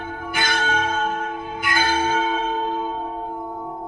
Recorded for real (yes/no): no